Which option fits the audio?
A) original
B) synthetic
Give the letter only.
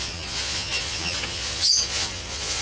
B